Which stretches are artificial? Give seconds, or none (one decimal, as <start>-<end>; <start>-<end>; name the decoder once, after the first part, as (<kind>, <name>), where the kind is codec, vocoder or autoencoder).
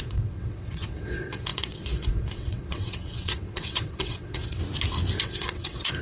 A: 0.0-4.6 (vocoder, WaveNeXt); 5.2-6.0